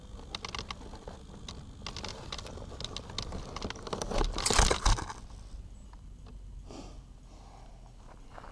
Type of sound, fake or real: real